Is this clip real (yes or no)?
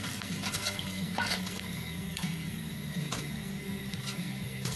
no